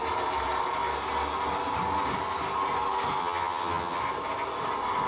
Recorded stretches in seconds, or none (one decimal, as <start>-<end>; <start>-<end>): 0.0-3.2; 4.0-5.1